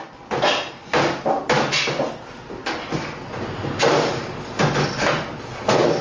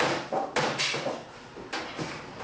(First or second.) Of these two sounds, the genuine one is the first